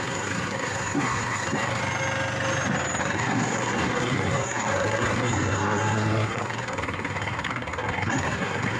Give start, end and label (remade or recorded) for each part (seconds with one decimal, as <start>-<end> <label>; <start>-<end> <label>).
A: 0.0-1.8 remade; 1.8-3.0 recorded; 3.0-8.8 remade